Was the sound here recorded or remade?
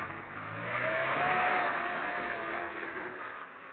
remade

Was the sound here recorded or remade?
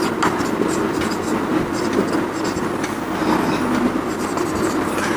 recorded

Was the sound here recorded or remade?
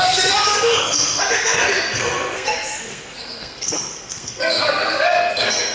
remade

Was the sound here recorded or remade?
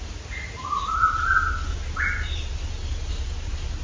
recorded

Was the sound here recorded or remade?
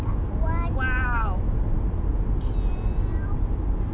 recorded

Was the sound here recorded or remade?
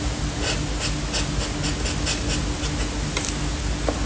recorded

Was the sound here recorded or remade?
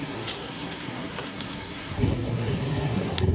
remade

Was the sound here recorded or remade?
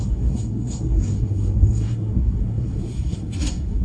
remade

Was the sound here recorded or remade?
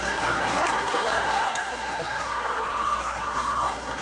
remade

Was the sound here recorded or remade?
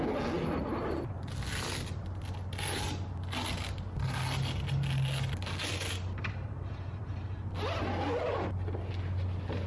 recorded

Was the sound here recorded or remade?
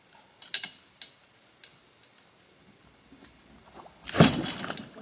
recorded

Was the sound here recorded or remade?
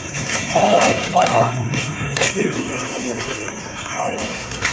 remade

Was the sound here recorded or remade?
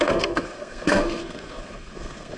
remade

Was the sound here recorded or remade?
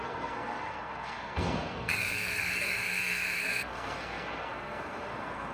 remade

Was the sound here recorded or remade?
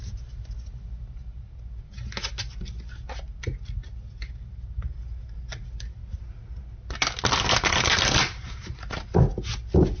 recorded